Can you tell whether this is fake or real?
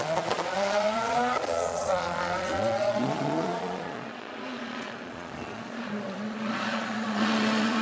fake